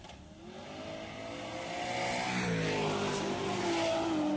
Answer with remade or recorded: recorded